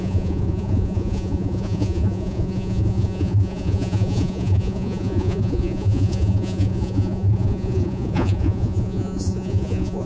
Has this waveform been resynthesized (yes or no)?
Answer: yes